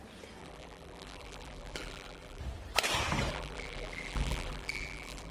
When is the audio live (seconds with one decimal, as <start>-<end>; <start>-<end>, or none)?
0.0-0.4; 2.4-3.3